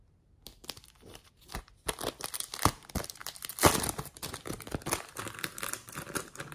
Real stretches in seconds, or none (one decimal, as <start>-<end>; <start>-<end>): 0.0-0.5; 1.3-3.2; 4.0-6.5